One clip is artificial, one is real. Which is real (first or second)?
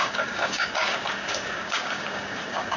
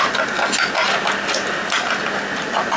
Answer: second